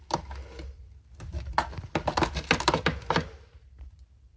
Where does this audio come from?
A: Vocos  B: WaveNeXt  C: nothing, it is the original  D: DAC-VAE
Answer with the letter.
C